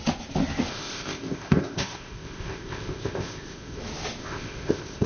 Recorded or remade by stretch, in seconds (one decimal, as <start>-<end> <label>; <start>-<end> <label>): 0.0-0.7 recorded; 0.7-3.8 remade; 3.8-4.2 recorded; 4.2-5.1 remade